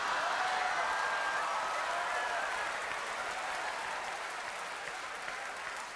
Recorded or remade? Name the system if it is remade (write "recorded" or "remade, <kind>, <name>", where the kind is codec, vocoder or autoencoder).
recorded